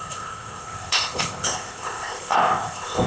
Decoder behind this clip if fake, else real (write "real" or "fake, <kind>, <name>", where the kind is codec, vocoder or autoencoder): fake, codec, ZipCodec